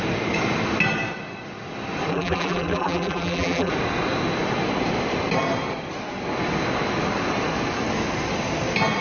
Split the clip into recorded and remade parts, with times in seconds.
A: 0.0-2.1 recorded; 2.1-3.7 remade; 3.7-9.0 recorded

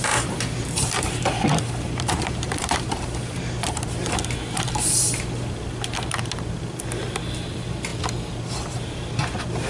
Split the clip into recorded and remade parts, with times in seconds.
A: 0.0-7.9 remade; 7.9-8.6 recorded; 8.6-9.7 remade

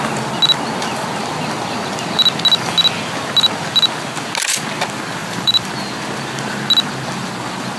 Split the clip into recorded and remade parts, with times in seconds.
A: 0.0-5.2 recorded; 5.2-5.7 remade; 5.7-7.8 recorded

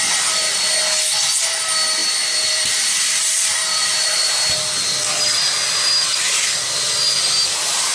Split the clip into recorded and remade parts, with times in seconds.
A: 0.0-2.0 recorded; 2.0-4.3 remade; 4.3-7.9 recorded